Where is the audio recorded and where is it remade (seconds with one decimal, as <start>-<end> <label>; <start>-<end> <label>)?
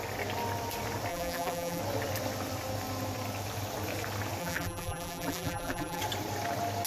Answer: 0.0-1.1 recorded; 1.1-1.8 remade; 1.8-4.4 recorded; 4.4-6.0 remade; 6.0-6.9 recorded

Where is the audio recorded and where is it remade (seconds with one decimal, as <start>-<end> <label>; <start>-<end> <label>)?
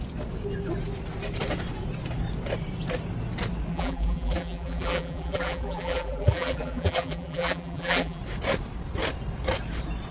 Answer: 0.0-3.7 recorded; 3.7-8.2 remade; 8.2-10.1 recorded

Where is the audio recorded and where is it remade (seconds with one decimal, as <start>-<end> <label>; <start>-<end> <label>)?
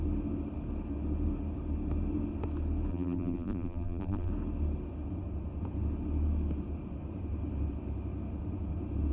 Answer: 0.0-2.9 recorded; 2.9-4.3 remade; 4.3-9.1 recorded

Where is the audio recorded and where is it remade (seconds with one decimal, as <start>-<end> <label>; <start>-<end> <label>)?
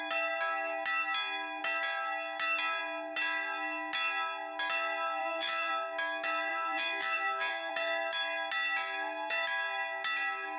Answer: 0.0-5.2 recorded; 5.2-5.7 remade; 5.7-6.5 recorded; 6.5-7.7 remade; 7.7-10.6 recorded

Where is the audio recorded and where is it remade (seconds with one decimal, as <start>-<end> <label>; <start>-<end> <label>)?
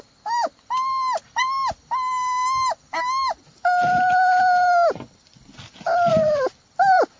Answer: 0.0-6.1 recorded; 6.1-7.2 remade